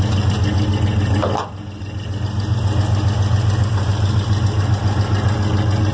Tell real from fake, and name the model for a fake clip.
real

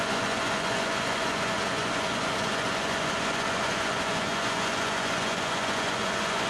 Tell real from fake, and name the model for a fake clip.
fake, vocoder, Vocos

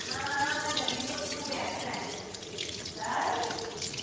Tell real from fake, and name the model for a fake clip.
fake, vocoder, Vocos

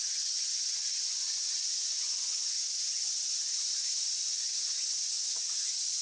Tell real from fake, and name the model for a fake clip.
fake, vocoder, Vocos